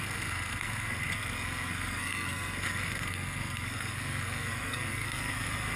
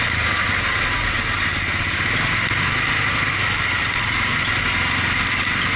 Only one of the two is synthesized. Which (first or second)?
first